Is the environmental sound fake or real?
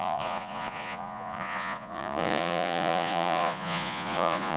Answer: fake